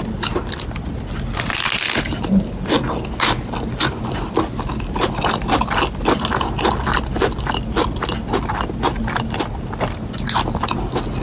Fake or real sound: real